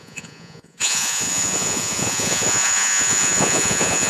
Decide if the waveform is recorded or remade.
remade